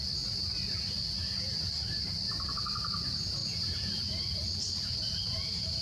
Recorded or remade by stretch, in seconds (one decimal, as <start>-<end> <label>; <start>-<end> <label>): 0.0-5.8 recorded